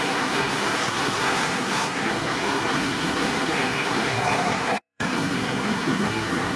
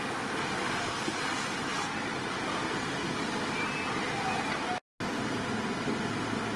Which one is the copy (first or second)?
first